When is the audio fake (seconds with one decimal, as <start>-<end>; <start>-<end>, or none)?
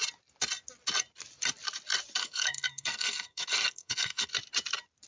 2.2-4.3